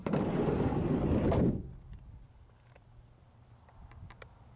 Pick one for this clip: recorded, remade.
remade